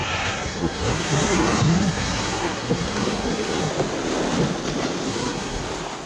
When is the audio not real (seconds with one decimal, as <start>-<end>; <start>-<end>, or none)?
0.0-3.7; 5.1-5.6